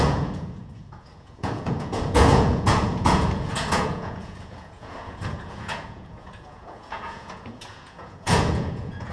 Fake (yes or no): yes